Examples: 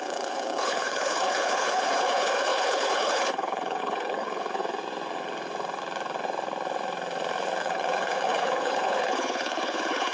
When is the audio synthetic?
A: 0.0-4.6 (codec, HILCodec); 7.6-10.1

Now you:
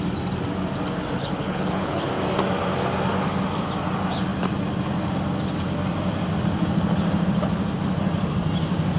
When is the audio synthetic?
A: 1.2-2.1 (codec, HILCodec)

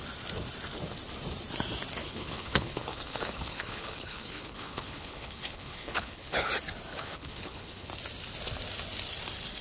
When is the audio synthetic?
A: 2.0-6.5 (codec, HILCodec); 6.9-7.9

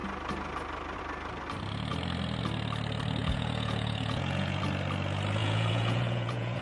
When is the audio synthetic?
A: 3.2-4.6 (vocoder, Vocos); 5.4-6.6

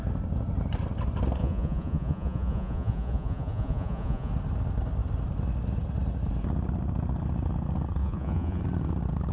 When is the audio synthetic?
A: 1.4-4.3 (vocoder, Vocos); 8.0-8.6

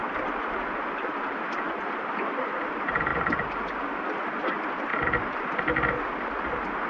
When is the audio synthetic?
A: 0.0-2.7 (vocoder, BigVGAN v2); 4.9-5.6